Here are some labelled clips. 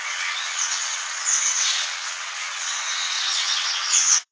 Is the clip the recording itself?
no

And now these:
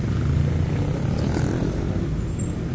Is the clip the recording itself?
yes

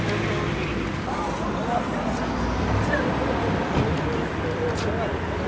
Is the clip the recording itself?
yes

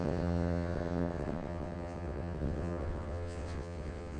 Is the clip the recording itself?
no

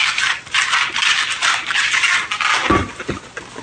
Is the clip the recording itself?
yes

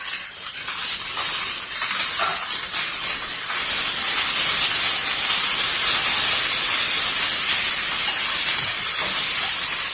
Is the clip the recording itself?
yes